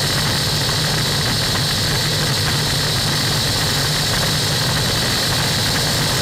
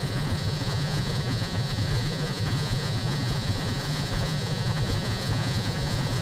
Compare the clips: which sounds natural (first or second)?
first